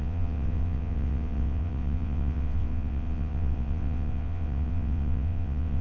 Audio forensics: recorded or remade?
remade